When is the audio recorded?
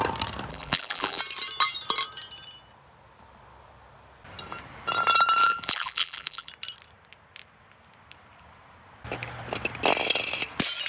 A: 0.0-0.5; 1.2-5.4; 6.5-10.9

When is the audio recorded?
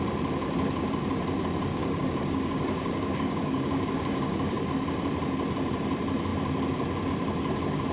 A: 0.0-1.7; 4.7-7.9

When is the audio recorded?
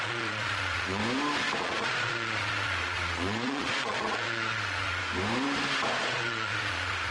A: 1.0-1.6; 5.0-6.0